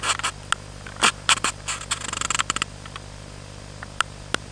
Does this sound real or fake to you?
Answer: real